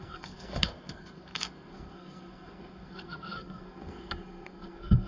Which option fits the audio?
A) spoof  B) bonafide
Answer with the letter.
A